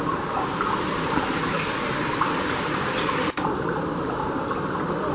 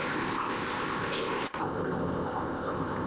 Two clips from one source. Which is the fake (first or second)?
second